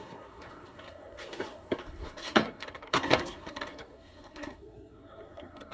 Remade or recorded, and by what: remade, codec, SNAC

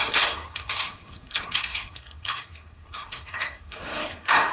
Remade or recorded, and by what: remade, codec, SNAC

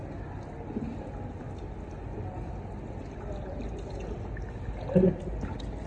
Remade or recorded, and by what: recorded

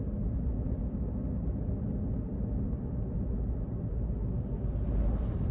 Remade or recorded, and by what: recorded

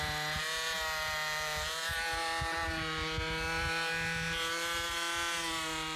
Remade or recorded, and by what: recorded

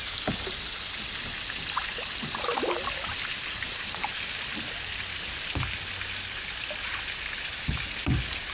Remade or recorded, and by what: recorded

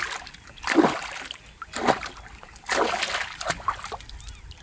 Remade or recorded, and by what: recorded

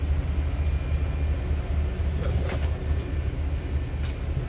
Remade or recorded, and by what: recorded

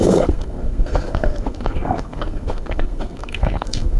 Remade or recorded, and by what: remade, codec, SNAC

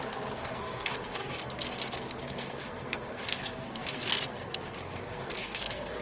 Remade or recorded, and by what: remade, codec, SNAC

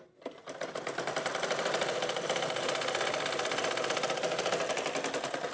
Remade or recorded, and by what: recorded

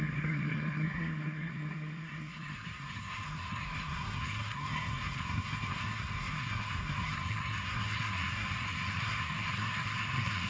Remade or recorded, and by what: remade, codec, SNAC